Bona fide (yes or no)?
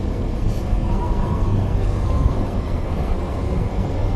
no